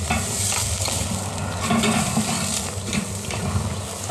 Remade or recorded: remade